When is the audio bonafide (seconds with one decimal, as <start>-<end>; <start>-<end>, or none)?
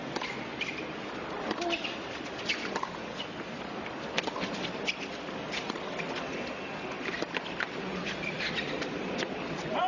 0.0-9.9